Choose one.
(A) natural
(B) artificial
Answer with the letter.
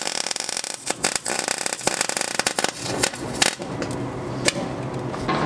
A